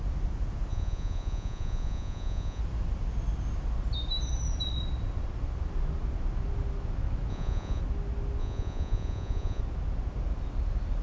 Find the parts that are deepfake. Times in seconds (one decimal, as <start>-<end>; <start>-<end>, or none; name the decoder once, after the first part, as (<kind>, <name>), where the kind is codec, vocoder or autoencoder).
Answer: 0.7-2.6 (vocoder, Vocos); 7.3-7.8; 8.4-9.6